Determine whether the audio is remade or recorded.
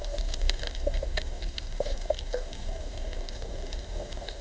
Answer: remade